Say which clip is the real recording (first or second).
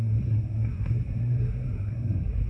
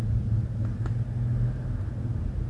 second